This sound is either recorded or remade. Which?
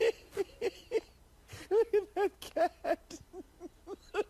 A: recorded